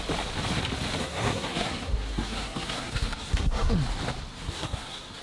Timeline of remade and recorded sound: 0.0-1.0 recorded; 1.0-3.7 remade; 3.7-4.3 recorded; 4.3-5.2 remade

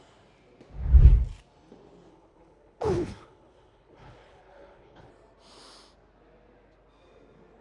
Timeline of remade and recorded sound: 0.0-2.1 recorded; 2.1-5.1 remade; 5.1-7.6 recorded